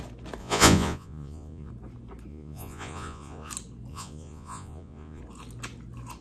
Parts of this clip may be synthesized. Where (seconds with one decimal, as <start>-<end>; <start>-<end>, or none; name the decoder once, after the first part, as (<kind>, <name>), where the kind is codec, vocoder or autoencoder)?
0.4-1.7 (vocoder, Vocos); 2.3-3.5; 3.9-5.2